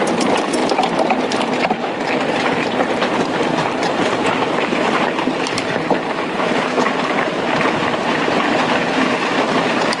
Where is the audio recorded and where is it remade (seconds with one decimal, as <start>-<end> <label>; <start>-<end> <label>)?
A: 0.0-0.6 remade; 0.6-1.7 recorded; 1.7-10.0 remade